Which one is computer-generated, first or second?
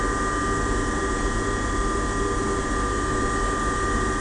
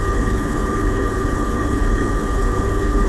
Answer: second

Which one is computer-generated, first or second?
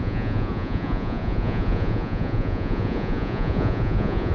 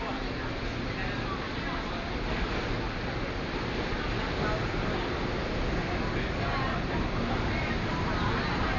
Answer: first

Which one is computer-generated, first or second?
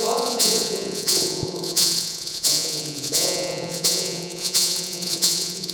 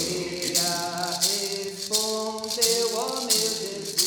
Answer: first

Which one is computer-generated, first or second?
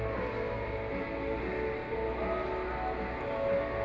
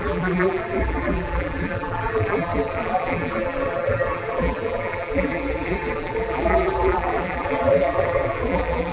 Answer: second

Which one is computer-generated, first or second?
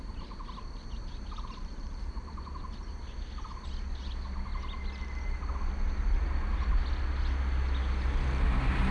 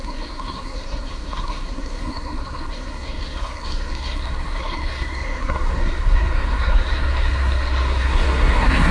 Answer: second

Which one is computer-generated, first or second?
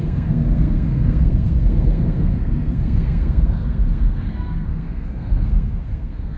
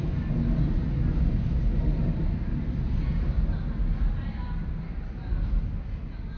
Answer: first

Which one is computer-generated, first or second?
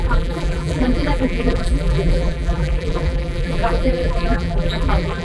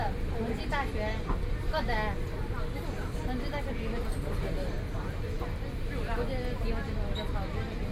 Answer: first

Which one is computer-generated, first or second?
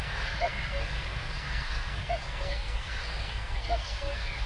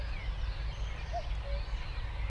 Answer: first